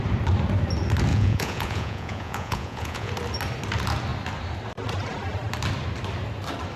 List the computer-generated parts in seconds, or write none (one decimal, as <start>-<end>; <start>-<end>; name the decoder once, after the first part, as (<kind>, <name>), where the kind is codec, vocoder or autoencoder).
1.1-3.1 (vocoder, Vocos)